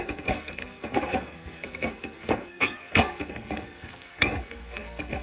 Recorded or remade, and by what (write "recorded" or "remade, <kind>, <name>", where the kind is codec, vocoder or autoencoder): remade, codec, SNAC